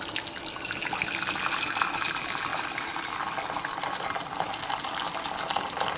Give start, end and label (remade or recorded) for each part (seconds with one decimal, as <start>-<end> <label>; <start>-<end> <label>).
0.0-6.0 recorded